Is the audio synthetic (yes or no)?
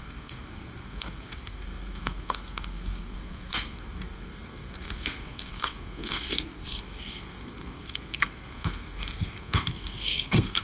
yes